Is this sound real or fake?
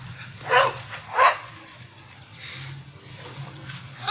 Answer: real